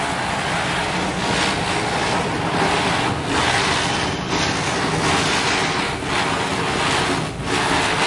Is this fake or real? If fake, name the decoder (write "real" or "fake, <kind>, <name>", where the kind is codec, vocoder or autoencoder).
real